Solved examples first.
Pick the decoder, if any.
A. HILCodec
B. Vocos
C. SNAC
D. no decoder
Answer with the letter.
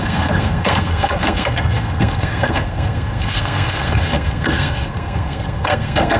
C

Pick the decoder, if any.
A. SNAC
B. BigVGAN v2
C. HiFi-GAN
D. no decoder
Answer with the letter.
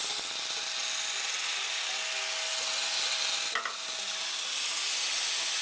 D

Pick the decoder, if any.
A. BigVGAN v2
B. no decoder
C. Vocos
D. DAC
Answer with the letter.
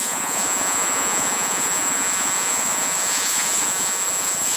C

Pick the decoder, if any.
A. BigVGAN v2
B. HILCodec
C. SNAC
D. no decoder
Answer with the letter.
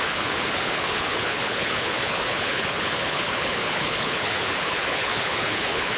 B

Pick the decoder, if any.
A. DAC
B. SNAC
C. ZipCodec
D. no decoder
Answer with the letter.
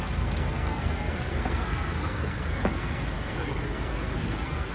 B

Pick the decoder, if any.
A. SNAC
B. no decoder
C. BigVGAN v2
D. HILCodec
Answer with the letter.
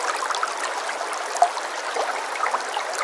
B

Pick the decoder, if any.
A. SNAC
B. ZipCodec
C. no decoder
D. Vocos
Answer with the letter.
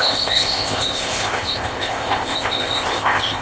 B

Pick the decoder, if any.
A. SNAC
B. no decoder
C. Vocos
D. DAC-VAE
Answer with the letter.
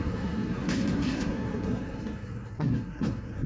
A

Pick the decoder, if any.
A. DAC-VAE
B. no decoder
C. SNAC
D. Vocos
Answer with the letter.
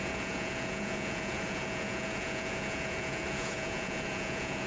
D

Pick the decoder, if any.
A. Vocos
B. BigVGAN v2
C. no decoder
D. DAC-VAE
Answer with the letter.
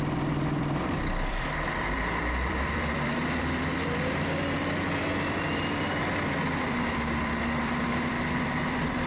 B